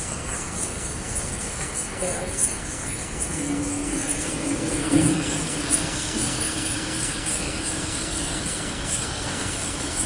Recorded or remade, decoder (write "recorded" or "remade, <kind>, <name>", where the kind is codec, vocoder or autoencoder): remade, codec, SNAC